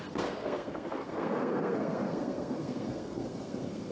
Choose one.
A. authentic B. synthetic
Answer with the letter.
B